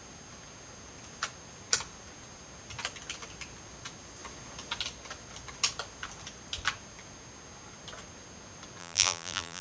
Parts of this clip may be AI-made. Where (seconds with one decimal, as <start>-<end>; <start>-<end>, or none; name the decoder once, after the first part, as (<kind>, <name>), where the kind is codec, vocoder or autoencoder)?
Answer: 8.8-9.6 (vocoder, BigVGAN v2)